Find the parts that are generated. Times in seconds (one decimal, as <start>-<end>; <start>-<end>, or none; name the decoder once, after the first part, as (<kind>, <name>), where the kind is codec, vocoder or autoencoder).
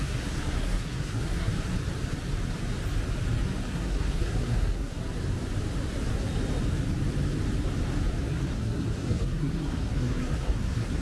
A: 0.0-1.5 (codec, SNAC); 3.6-5.0; 8.3-11.0